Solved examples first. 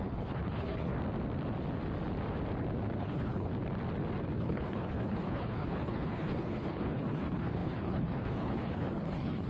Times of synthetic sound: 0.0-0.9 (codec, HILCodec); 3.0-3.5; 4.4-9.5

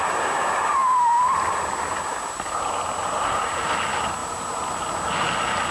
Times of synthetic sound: none

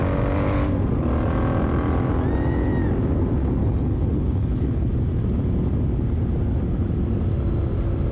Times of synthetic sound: 3.6-4.9 (codec, HILCodec)